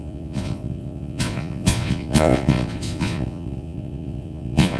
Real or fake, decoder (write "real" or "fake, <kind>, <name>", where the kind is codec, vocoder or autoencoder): fake, vocoder, Vocos